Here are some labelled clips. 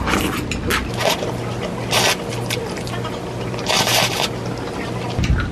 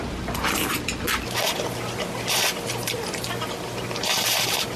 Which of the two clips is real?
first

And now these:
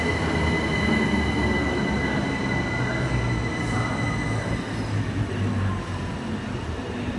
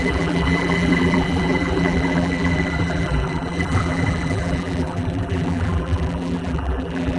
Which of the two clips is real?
first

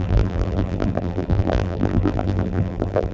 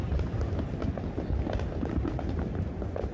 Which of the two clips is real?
second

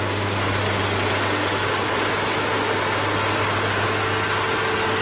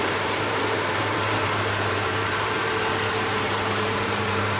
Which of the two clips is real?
first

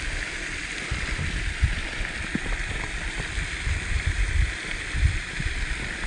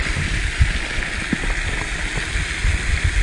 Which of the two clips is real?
second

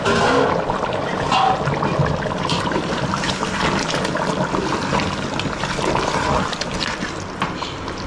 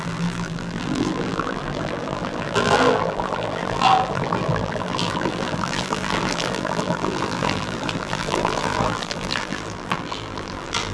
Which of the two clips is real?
first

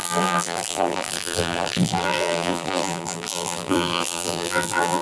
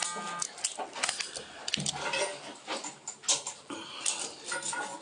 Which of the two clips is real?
second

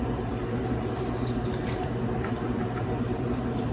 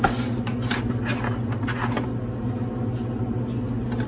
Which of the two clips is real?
second